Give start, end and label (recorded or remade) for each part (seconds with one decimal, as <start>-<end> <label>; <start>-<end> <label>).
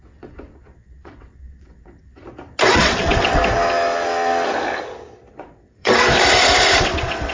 0.0-2.2 remade; 2.2-2.7 recorded; 2.7-3.4 remade; 3.4-5.3 recorded; 5.3-6.1 remade; 6.1-6.8 recorded; 6.8-7.3 remade